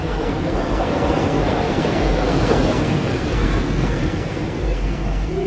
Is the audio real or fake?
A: fake